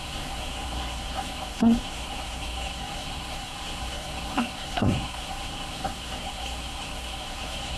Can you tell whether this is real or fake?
fake